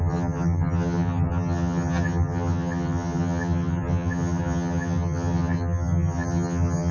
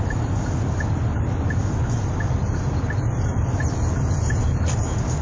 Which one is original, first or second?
second